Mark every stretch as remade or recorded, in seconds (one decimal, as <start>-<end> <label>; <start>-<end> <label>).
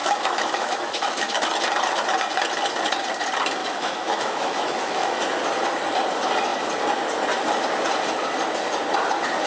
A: 0.0-1.4 remade; 1.4-3.6 recorded; 3.6-5.2 remade; 5.2-9.5 recorded